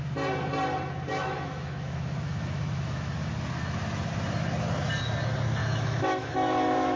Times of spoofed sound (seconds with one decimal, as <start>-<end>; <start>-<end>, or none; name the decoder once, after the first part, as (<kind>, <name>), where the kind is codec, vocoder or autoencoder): 1.1-3.3 (autoencoder, DAC-VAE); 5.6-7.0